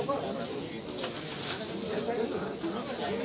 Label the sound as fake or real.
real